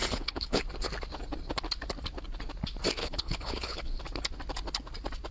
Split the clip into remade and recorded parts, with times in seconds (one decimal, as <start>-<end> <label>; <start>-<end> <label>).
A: 0.0-0.6 remade; 0.6-3.0 recorded; 3.0-4.0 remade; 4.0-5.3 recorded